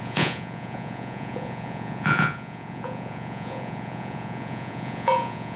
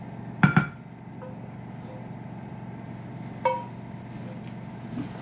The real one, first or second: second